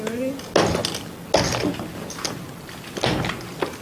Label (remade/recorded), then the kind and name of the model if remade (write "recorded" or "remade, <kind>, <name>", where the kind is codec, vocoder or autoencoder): recorded